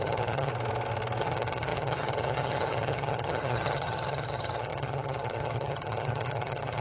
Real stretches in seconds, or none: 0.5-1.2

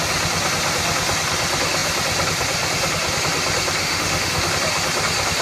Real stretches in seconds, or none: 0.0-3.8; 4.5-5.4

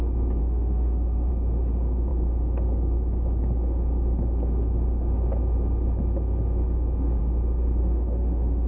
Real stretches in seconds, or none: 0.0-0.4; 1.3-7.8